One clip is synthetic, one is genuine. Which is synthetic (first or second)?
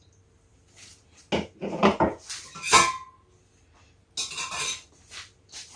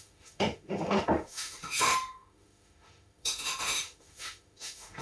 second